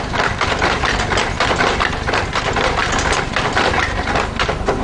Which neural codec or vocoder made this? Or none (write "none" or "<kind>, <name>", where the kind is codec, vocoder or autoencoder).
vocoder, BigVGAN v2